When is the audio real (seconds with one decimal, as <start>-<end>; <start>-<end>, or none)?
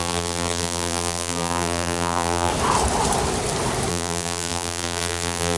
2.5-3.9